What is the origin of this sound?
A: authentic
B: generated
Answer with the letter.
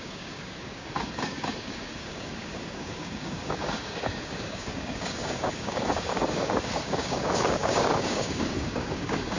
B